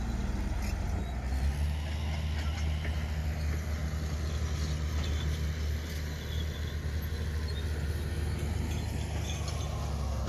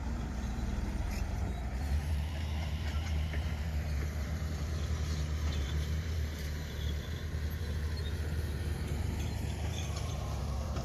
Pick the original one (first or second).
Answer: first